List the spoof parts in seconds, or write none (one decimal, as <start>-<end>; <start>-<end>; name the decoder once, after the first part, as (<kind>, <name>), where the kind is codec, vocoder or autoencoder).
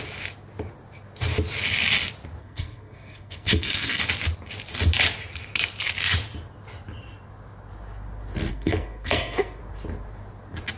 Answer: 2.4-4.0 (codec, SNAC); 8.5-9.6